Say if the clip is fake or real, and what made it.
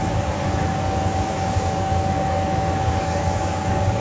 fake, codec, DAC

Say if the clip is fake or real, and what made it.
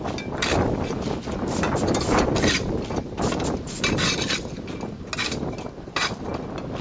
real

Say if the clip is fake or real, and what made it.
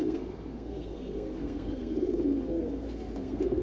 fake, codec, SNAC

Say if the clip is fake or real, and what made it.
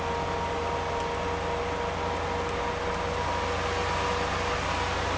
real